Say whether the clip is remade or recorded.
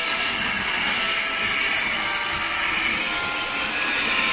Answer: recorded